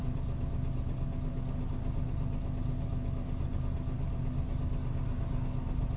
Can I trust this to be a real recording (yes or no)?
yes